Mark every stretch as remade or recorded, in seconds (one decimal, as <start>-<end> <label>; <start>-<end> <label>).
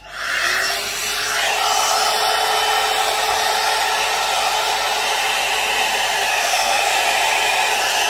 0.0-6.3 recorded; 6.3-6.9 remade; 6.9-8.1 recorded